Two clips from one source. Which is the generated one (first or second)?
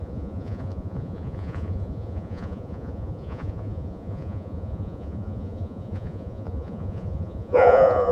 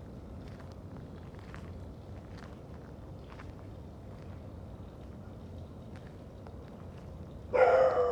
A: first